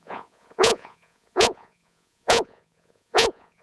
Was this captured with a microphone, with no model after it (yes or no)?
no